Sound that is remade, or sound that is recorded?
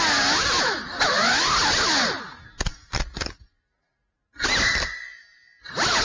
recorded